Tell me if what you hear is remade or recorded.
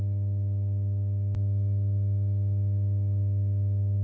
recorded